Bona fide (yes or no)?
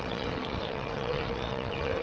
no